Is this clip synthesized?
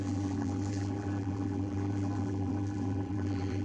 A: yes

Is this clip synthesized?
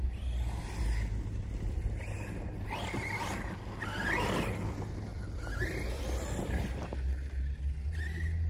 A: no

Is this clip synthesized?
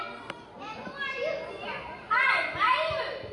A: no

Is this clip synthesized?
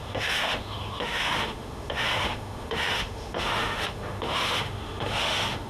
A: yes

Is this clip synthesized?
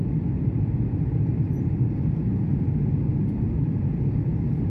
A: no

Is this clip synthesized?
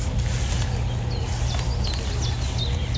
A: no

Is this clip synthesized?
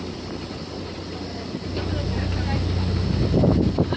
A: no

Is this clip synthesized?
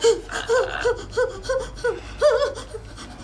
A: no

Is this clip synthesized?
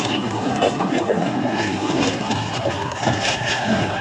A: yes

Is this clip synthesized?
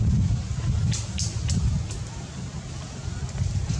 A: no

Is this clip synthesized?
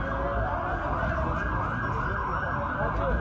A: no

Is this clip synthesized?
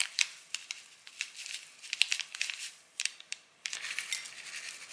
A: no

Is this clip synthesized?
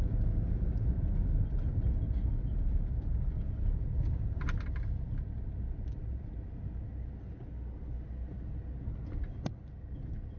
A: no